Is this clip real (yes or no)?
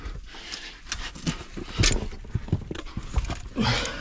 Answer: yes